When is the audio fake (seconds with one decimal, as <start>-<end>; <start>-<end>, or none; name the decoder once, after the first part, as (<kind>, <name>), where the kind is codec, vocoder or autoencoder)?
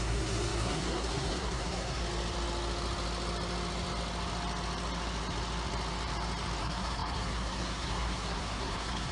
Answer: 0.0-2.0 (codec, SNAC); 6.6-9.1